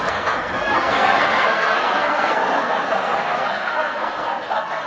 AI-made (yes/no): yes